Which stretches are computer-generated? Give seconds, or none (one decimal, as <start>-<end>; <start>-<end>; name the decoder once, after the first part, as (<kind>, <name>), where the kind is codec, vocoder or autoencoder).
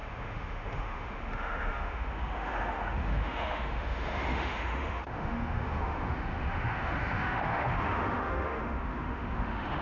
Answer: 0.0-9.8 (autoencoder, DAC-VAE)